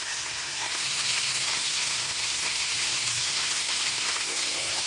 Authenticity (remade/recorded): remade